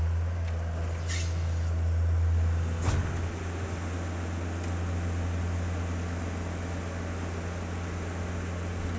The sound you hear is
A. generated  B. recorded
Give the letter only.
B